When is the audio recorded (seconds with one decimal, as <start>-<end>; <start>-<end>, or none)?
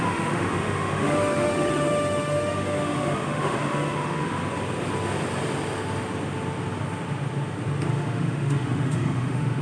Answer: 4.4-7.9